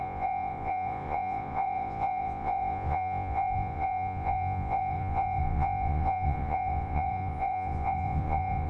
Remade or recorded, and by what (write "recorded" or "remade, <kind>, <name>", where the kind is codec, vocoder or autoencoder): remade, vocoder, Vocos